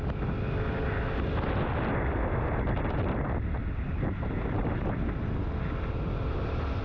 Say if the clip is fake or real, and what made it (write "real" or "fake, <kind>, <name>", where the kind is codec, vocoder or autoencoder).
real